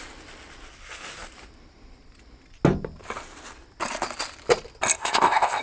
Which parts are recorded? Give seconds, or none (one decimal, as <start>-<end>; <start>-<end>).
0.0-5.0